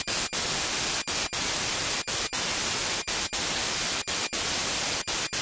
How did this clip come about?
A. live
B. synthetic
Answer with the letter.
A